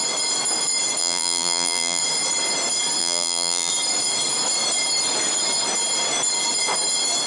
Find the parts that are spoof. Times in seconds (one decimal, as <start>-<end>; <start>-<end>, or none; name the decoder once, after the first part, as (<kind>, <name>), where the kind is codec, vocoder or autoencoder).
1.0-2.0 (vocoder, BigVGAN v2); 3.0-3.7